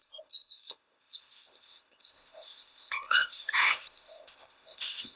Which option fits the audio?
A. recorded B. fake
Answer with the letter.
B